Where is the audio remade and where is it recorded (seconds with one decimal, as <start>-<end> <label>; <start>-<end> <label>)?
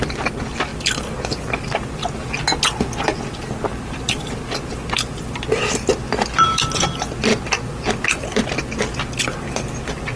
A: 0.0-10.2 recorded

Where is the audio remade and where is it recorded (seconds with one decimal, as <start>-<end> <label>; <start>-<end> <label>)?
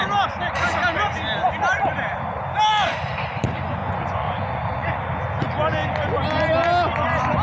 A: 0.0-3.8 recorded; 3.8-5.0 remade; 5.0-7.4 recorded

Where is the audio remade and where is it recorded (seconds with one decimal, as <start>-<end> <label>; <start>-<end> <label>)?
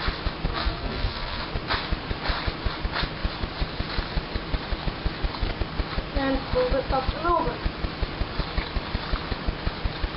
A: 0.0-0.5 recorded; 0.5-1.4 remade; 1.4-10.2 recorded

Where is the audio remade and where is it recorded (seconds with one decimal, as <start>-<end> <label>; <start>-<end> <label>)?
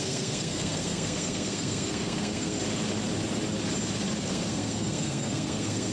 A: 0.0-2.6 remade; 2.6-4.2 recorded; 4.2-5.9 remade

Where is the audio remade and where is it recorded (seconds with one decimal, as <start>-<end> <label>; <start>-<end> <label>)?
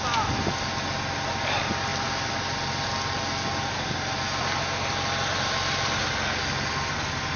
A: 0.0-7.4 recorded